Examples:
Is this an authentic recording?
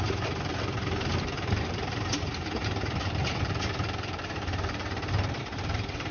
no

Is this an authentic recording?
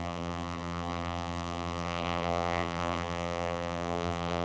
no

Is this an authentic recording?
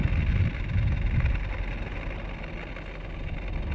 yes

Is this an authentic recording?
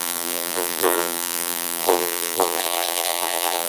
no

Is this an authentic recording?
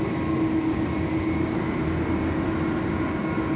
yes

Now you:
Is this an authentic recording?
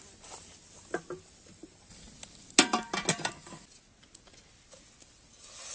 yes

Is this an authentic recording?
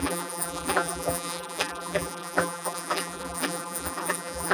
no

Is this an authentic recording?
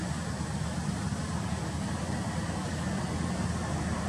yes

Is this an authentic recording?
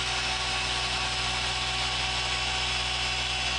yes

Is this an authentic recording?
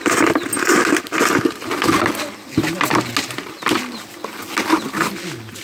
yes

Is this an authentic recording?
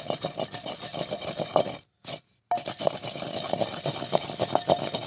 yes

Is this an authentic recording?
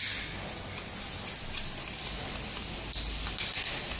yes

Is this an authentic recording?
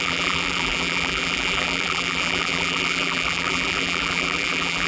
no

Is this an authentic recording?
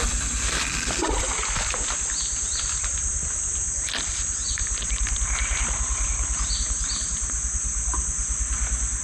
yes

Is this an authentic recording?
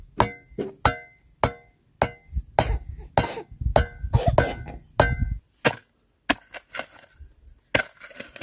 yes